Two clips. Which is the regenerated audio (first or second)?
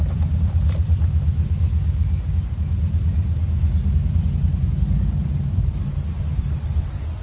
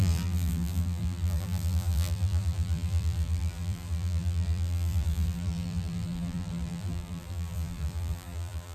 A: second